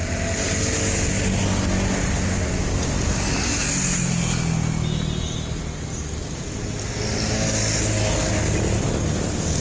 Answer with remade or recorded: recorded